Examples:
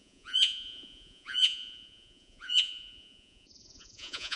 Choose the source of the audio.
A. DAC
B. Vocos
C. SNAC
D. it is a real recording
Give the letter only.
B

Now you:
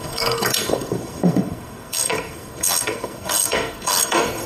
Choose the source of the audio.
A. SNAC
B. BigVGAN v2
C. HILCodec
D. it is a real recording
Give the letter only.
A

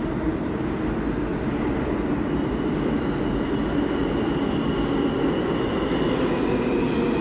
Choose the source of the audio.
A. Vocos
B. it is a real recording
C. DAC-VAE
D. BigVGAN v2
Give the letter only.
B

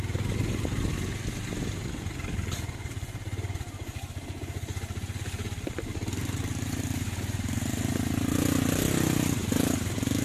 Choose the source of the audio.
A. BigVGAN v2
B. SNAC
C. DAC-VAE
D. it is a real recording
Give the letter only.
D